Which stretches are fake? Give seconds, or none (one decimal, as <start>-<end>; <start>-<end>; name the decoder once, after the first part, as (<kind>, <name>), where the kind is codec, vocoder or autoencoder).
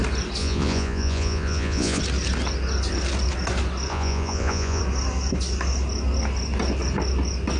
0.4-2.0 (vocoder, Vocos); 3.9-4.8